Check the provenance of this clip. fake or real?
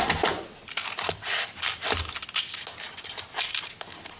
real